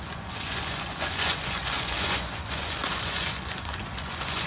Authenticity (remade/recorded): remade